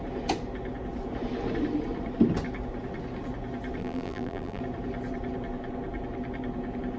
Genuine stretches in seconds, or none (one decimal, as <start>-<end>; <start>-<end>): 0.0-3.8; 4.6-7.0